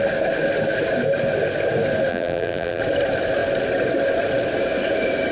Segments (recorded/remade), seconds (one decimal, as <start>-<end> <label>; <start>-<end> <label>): 0.0-2.1 recorded; 2.1-2.8 remade; 2.8-5.3 recorded